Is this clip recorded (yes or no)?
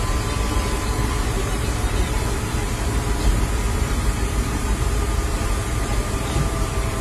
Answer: no